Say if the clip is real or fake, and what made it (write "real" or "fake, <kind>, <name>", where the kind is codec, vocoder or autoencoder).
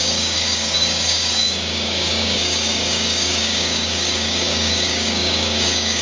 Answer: fake, codec, DAC